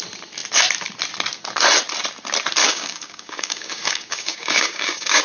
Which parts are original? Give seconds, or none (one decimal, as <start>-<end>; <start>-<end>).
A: 0.0-2.6